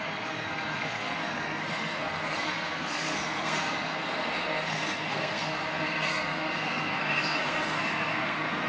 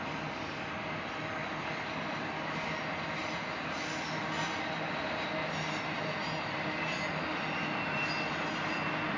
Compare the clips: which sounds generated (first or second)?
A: first